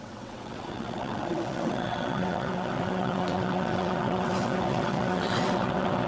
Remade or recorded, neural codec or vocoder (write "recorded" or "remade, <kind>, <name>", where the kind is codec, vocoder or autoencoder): remade, vocoder, WaveNeXt